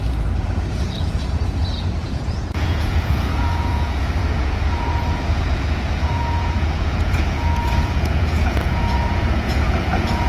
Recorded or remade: remade